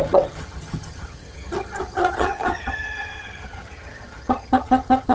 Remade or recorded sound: remade